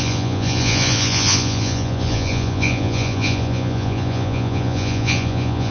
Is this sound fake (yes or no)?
yes